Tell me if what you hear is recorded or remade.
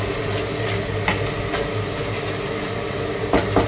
recorded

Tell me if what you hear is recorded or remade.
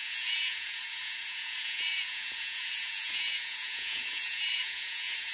remade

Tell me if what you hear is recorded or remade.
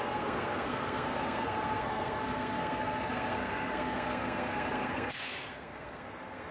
remade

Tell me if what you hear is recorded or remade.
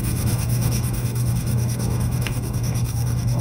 remade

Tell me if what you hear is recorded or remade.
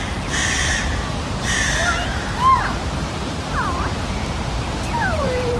remade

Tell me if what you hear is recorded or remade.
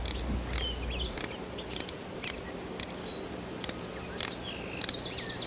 recorded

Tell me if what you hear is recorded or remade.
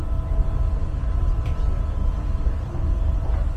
recorded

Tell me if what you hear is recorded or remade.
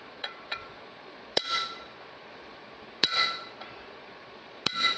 remade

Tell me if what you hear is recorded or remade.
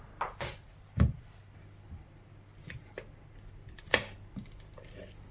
recorded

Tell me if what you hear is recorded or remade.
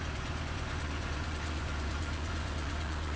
remade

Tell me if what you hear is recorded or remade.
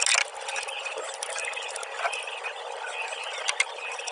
recorded